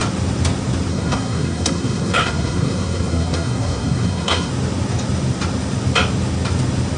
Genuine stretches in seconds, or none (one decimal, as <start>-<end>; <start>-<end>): 0.0-0.9; 4.5-7.0